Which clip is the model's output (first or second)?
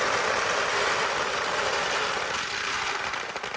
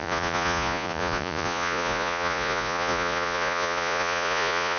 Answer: second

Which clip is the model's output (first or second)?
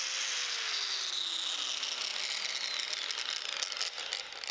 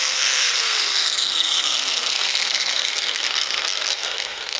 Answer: second